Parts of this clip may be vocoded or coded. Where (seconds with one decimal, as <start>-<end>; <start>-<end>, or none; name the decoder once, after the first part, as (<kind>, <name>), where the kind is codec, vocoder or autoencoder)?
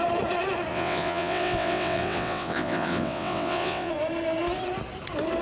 0.7-3.9 (vocoder, WaveNeXt)